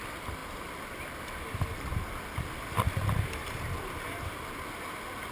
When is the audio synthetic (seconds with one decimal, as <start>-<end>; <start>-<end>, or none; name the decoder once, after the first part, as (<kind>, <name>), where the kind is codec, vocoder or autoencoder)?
none